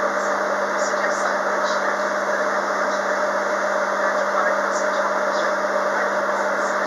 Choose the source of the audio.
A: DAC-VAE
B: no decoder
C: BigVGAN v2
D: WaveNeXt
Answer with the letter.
B